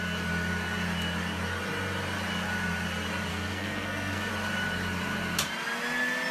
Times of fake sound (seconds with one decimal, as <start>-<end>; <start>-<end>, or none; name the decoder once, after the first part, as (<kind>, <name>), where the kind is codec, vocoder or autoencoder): 3.3-4.3 (codec, SNAC)